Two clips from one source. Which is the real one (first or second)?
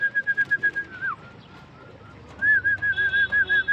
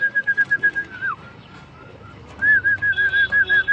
first